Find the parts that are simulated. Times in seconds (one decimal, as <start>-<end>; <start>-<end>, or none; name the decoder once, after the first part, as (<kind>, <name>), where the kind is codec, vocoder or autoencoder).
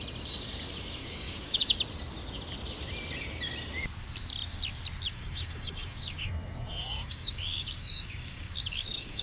1.0-1.8 (codec, DAC); 5.1-9.2